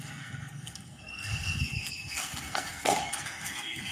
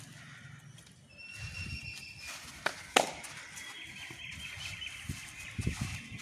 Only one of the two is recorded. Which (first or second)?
second